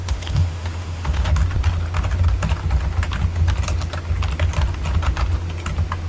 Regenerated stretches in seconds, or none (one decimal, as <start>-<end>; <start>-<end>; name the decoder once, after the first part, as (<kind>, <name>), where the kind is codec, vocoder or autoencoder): 0.0-1.3 (autoencoder, DAC-VAE)